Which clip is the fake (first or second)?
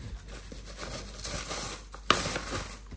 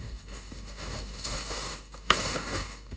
second